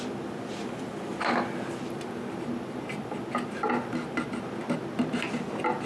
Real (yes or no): yes